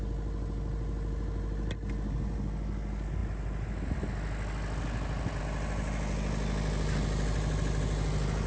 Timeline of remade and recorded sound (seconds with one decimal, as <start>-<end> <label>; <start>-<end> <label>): 0.0-8.5 recorded